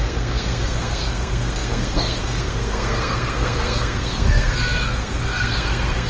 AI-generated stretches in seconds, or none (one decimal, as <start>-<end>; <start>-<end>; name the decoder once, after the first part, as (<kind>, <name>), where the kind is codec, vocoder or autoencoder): 0.0-6.1 (codec, SNAC)